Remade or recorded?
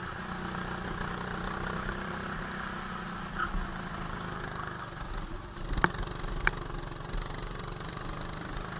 recorded